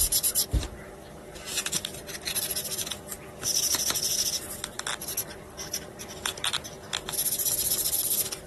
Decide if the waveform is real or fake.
real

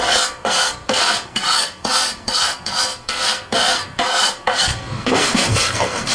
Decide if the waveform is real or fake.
fake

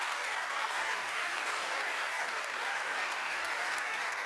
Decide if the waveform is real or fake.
fake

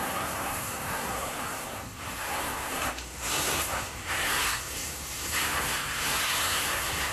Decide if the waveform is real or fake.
fake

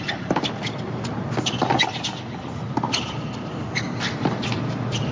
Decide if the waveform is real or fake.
fake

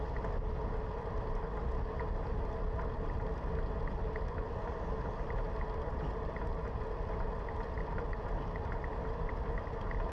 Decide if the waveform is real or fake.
real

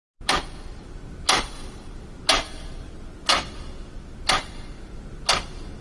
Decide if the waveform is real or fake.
real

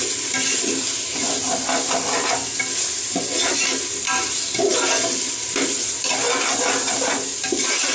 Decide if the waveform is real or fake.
real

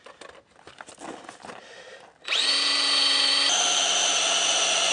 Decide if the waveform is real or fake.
real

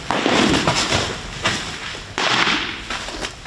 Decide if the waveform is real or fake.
real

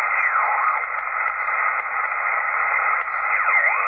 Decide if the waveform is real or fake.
real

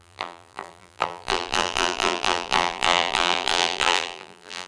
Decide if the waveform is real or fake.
fake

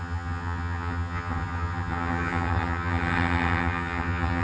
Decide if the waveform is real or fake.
fake